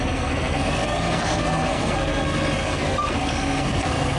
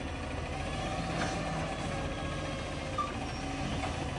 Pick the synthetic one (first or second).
first